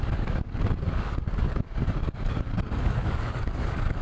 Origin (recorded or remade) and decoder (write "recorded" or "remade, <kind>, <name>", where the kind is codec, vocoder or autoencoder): remade, codec, DAC